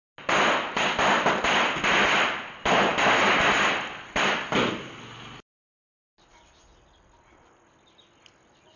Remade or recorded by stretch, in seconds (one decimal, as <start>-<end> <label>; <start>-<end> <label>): 0.0-8.8 recorded